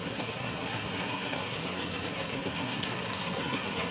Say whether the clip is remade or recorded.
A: remade